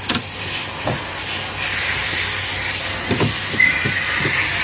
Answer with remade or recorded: recorded